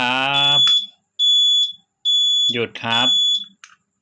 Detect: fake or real real